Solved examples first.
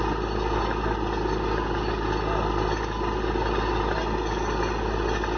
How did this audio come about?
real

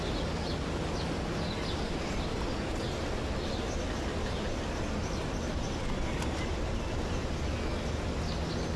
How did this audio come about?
real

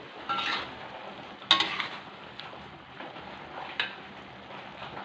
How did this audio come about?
real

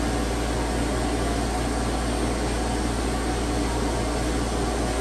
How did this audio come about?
real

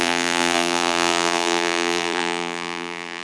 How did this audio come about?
fake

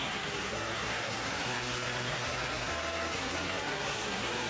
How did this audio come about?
fake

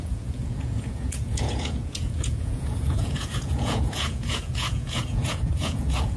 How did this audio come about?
fake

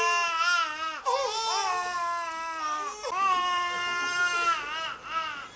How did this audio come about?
real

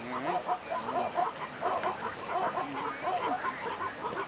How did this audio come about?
real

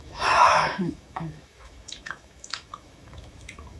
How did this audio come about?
fake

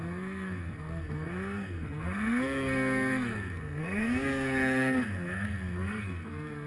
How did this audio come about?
fake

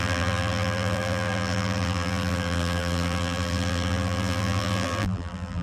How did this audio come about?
fake